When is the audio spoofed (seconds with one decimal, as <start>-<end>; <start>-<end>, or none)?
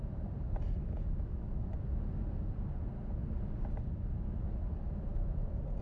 0.8-1.7